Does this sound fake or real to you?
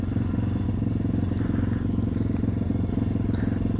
real